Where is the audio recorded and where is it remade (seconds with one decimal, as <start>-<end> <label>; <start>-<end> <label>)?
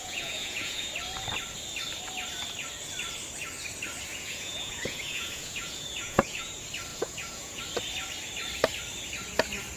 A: 0.0-0.9 remade; 0.9-4.1 recorded; 4.1-6.5 remade; 6.5-6.9 recorded; 6.9-7.6 remade; 7.6-9.8 recorded